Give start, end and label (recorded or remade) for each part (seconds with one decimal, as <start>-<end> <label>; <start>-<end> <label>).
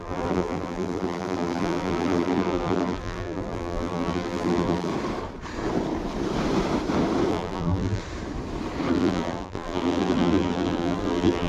0.0-4.9 remade; 4.9-7.3 recorded; 7.3-8.0 remade; 8.0-8.9 recorded; 8.9-11.5 remade